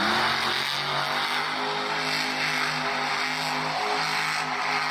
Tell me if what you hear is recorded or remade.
recorded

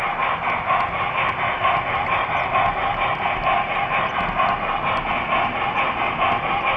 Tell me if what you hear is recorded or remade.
recorded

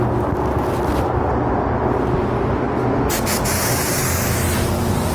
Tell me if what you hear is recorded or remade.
recorded